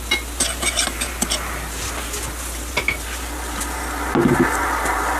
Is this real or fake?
real